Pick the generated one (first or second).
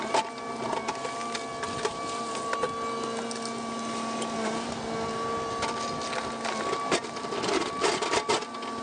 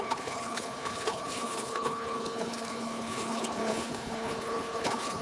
second